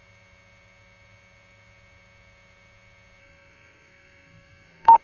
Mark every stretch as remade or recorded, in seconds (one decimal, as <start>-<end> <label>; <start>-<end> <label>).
0.0-3.2 recorded; 3.2-5.0 remade